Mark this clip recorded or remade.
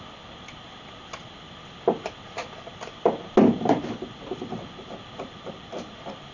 recorded